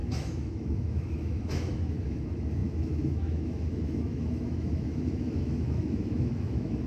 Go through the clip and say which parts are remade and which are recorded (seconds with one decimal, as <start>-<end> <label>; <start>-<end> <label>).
0.0-6.9 remade